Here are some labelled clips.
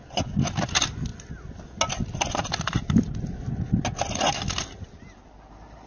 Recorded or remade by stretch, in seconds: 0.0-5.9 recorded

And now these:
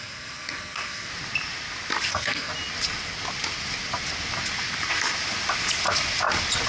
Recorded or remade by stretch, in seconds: 0.0-1.1 remade; 1.1-2.1 recorded; 2.1-2.5 remade; 2.5-6.7 recorded